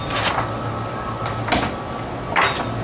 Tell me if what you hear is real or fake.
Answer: real